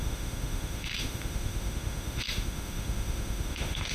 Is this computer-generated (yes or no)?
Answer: yes